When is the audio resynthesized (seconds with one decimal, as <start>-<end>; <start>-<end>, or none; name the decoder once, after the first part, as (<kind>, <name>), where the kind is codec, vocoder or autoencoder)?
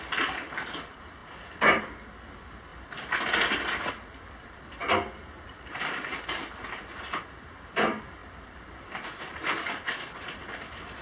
none